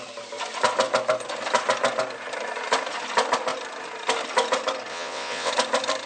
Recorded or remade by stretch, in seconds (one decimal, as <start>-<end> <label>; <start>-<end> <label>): 0.0-4.9 recorded; 4.9-5.5 remade; 5.5-6.1 recorded